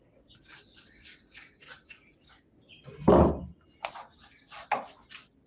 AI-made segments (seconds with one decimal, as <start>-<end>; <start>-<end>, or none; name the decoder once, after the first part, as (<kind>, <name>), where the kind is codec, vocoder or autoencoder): none